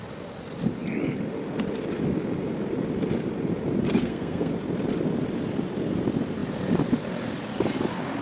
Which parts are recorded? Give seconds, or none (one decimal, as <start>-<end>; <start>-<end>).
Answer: 0.0-4.0; 4.5-8.2